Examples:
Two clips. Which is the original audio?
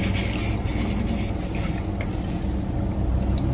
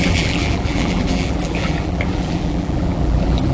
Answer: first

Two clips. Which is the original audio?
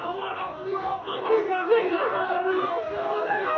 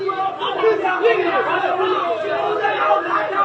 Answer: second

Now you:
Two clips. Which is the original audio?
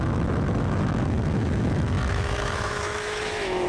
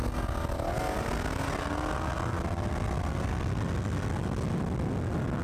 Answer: second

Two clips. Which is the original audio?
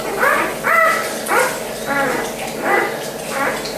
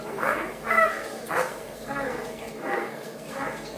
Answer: first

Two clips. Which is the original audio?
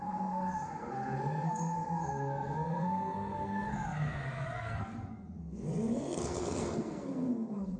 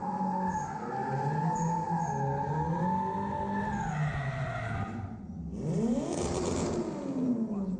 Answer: second